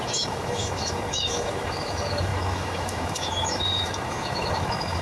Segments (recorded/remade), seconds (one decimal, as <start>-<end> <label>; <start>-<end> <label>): 0.0-5.0 remade